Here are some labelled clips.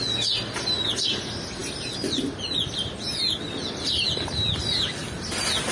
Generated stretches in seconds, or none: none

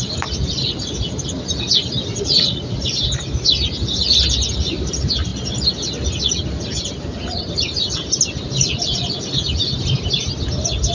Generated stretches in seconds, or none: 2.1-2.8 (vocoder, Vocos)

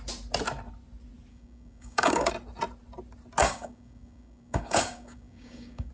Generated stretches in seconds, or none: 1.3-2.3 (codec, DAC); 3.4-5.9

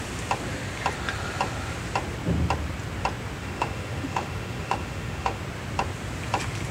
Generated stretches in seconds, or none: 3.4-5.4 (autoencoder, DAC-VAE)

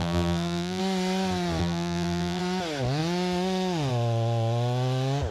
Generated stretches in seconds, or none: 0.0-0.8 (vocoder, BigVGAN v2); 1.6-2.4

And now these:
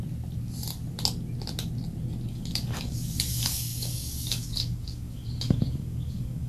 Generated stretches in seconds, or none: 2.3-6.5 (codec, DAC)

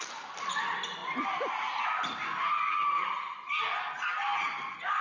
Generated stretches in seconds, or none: none

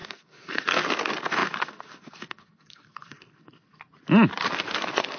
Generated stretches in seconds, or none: 0.0-3.9 (codec, SNAC); 4.5-5.2